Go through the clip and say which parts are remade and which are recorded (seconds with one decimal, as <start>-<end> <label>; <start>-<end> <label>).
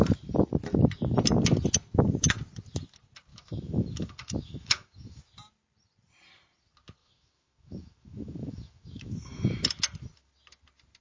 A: 0.0-3.3 recorded; 3.3-5.2 remade; 5.2-7.0 recorded; 7.0-9.6 remade; 9.6-11.0 recorded